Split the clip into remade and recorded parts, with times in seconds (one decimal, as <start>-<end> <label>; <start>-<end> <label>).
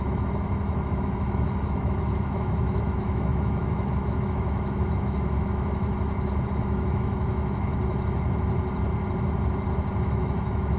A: 0.0-5.9 remade; 5.9-6.5 recorded; 6.5-7.7 remade; 7.7-10.0 recorded; 10.0-10.8 remade